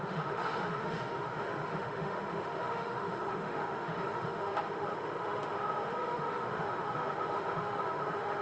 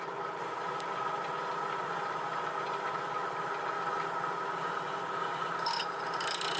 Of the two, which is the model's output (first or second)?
first